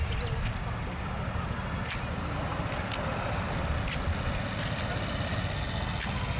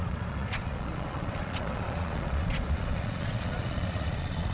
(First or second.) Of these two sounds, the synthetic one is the second